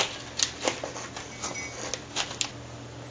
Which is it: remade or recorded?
recorded